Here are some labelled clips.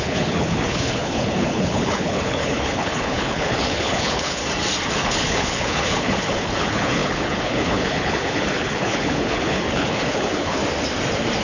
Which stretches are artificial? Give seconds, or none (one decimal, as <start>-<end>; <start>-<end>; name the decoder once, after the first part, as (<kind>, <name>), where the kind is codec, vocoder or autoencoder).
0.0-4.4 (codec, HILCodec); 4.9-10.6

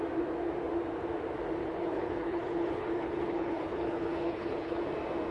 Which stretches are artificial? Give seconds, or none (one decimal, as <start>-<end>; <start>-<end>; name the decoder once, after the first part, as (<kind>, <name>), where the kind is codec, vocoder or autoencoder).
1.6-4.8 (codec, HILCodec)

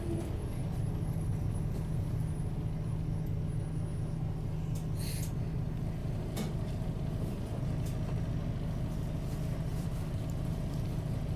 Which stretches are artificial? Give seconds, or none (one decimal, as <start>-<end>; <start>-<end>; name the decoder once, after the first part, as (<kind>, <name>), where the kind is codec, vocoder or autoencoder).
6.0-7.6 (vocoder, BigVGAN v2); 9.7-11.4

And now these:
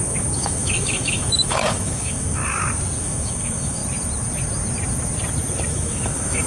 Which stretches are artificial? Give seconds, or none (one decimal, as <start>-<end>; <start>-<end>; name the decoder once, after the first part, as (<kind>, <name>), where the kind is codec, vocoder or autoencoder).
0.0-2.4 (autoencoder, DAC-VAE); 3.0-3.8; 5.7-6.5

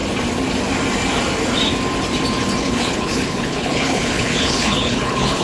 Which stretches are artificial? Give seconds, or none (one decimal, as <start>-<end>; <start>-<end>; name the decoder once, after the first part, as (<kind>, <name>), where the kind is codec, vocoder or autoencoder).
2.6-5.4 (codec, HILCodec)

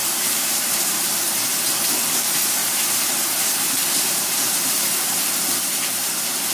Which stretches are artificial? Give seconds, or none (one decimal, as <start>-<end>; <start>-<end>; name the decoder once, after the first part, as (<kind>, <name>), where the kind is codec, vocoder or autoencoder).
0.0-1.5 (vocoder, BigVGAN v2); 2.6-5.2